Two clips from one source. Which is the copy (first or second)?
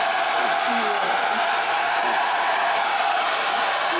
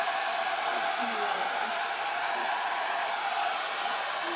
second